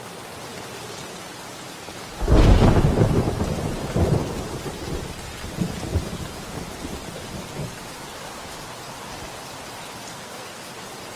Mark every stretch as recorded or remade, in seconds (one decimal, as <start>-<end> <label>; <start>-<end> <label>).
0.0-10.1 recorded; 10.1-10.6 remade; 10.6-11.2 recorded